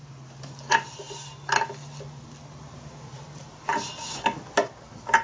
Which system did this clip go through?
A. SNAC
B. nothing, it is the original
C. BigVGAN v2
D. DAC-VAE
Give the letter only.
B